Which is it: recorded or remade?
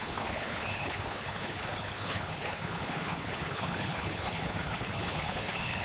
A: remade